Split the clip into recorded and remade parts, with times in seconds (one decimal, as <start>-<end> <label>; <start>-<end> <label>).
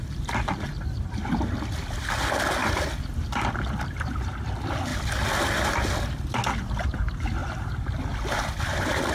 0.0-2.6 recorded; 2.6-4.1 remade; 4.1-4.9 recorded; 4.9-5.5 remade; 5.5-7.4 recorded; 7.4-8.2 remade; 8.2-9.1 recorded